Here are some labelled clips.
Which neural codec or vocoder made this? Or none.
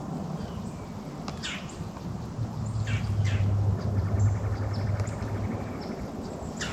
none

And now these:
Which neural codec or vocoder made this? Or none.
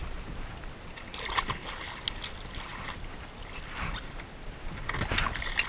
none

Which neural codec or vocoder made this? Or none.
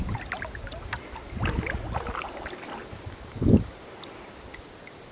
none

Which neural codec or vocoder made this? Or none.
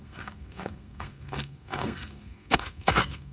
codec, SNAC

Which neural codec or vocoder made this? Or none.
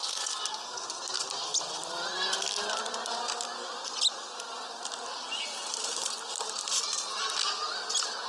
none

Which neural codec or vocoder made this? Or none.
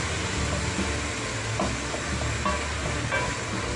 none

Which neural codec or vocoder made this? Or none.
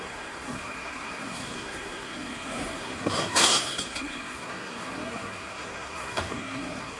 codec, SNAC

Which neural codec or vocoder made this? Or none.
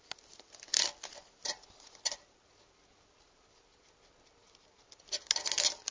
none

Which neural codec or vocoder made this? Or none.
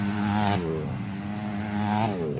none